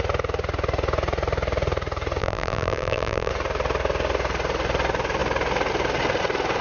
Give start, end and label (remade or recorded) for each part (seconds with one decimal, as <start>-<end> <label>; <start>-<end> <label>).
0.0-2.2 recorded; 2.2-3.3 remade; 3.3-6.6 recorded